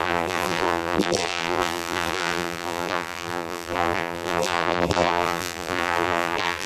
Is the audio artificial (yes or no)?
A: yes